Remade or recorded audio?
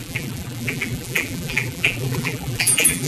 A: remade